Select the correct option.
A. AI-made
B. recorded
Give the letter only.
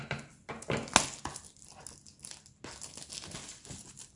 B